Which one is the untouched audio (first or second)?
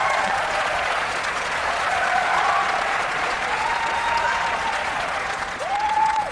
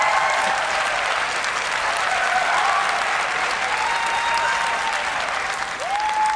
second